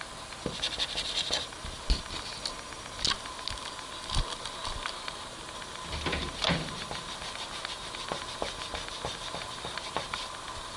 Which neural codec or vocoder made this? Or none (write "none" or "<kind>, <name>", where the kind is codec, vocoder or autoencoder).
none